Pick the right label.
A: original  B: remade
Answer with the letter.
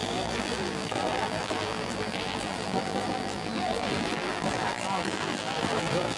B